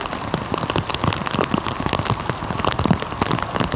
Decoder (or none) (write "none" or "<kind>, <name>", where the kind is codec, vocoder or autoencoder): none